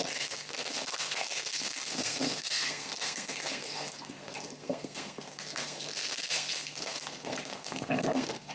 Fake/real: fake